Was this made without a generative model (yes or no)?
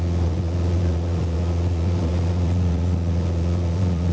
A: no